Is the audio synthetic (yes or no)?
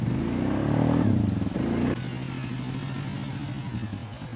no